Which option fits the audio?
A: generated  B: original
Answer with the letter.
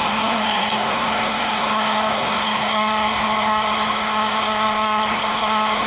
A